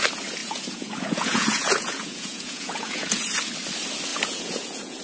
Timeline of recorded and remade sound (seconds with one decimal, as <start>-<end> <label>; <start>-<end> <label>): 0.0-0.4 recorded; 0.4-3.4 remade; 3.4-4.1 recorded; 4.1-5.0 remade